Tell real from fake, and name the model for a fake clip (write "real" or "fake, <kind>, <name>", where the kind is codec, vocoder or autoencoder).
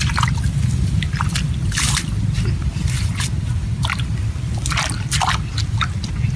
real